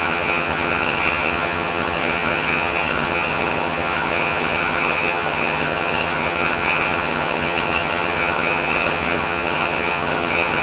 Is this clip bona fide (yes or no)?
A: no